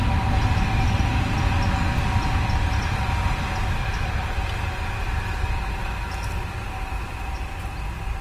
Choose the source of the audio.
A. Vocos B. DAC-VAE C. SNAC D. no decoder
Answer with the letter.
D